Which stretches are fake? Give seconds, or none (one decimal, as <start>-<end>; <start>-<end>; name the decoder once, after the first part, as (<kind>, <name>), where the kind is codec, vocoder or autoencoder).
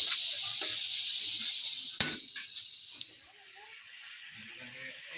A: none